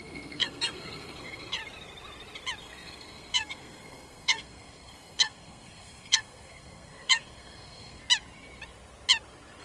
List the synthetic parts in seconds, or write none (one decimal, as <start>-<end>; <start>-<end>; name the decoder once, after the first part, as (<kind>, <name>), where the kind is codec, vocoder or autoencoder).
0.0-1.6 (codec, SNAC); 2.6-8.0